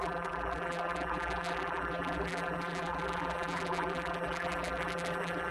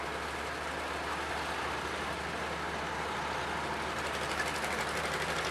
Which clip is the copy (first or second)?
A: first